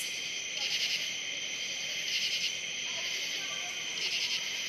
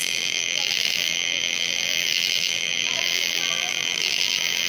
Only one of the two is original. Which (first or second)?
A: first